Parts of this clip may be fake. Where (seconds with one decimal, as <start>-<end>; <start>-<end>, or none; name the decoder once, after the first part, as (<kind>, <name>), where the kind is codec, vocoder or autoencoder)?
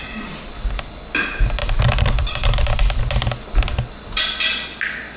none